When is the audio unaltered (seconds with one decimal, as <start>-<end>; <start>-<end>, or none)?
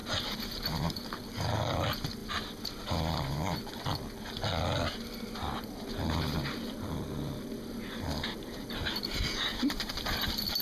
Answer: 0.0-9.5; 10.1-10.6